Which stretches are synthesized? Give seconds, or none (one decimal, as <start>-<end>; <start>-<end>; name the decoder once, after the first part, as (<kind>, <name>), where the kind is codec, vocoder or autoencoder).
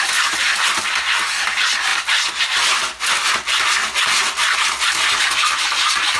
none